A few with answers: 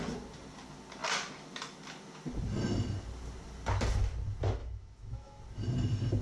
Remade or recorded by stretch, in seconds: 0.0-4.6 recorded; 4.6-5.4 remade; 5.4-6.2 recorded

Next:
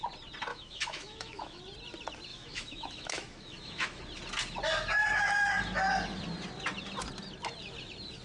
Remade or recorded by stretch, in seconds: 0.0-0.5 recorded; 0.5-1.6 remade; 1.6-2.3 recorded; 2.3-4.0 remade; 4.0-8.2 recorded

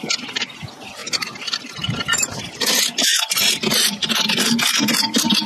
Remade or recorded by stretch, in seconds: 0.0-5.5 recorded

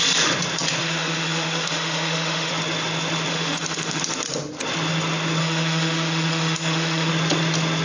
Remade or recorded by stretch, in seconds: 0.0-0.8 recorded; 0.8-2.5 remade; 2.5-3.3 recorded; 3.3-4.0 remade; 4.0-5.4 recorded; 5.4-7.1 remade; 7.1-7.8 recorded

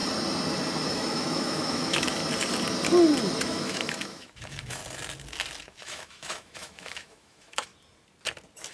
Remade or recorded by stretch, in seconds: 0.0-0.9 recorded; 0.9-2.2 remade; 2.2-3.4 recorded; 3.4-4.8 remade; 4.8-5.6 recorded; 5.6-7.7 remade; 7.7-8.7 recorded

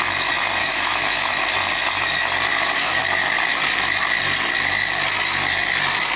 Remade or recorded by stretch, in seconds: 0.0-0.6 recorded; 0.6-1.3 remade; 1.3-2.5 recorded; 2.5-3.0 remade; 3.0-6.2 recorded